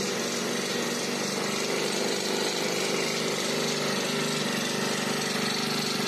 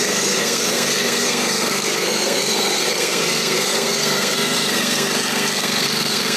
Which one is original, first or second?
first